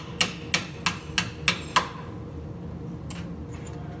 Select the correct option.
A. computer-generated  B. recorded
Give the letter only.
B